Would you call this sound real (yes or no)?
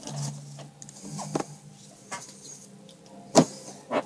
yes